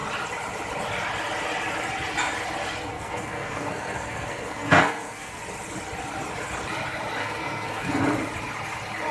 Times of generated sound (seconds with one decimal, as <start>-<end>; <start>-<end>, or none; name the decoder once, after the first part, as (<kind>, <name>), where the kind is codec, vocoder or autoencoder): 2.9-5.4 (codec, SNAC); 7.2-8.0